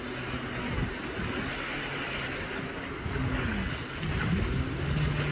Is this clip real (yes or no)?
yes